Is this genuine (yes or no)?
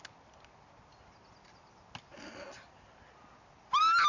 yes